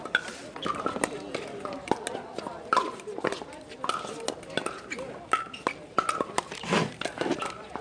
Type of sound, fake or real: real